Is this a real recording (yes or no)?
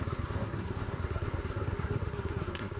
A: no